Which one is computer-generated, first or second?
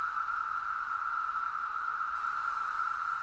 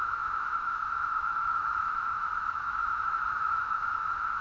second